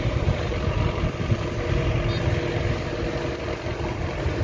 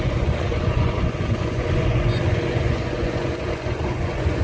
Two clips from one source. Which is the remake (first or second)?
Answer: second